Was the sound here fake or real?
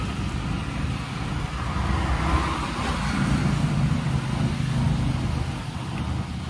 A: real